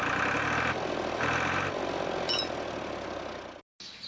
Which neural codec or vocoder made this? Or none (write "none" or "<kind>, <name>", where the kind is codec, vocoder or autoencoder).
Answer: none